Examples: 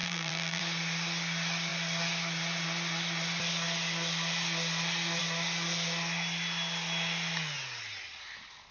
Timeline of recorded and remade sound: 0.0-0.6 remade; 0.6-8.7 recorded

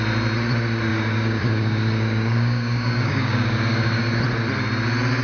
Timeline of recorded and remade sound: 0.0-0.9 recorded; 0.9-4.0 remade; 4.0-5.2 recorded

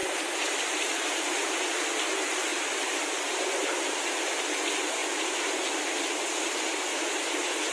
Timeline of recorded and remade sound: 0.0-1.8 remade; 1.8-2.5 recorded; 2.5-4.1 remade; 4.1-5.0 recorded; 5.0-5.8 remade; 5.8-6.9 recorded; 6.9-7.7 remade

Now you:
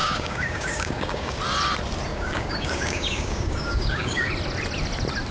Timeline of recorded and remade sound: 0.0-1.4 remade; 1.4-2.1 recorded; 2.1-4.3 remade; 4.3-5.3 recorded